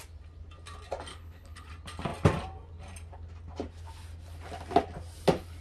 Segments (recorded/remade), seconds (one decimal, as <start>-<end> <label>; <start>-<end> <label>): 0.0-1.1 recorded; 1.1-1.7 remade; 1.7-5.6 recorded